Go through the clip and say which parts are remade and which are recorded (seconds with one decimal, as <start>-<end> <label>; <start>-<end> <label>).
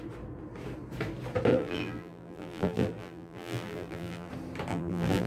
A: 0.0-1.5 recorded; 1.5-4.3 remade; 4.3-4.7 recorded; 4.7-5.3 remade